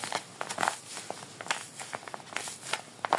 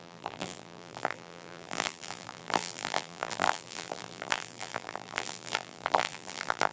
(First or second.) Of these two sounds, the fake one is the second